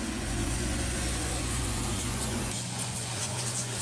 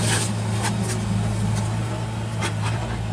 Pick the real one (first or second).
second